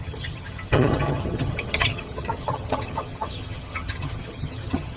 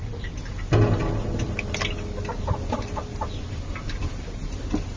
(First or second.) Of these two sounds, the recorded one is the second